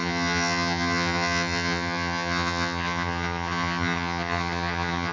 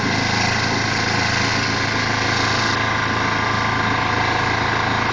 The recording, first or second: second